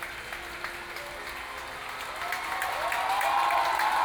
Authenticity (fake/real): real